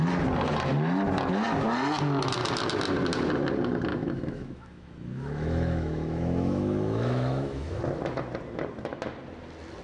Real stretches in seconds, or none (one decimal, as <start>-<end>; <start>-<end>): 0.0-3.9; 7.8-9.8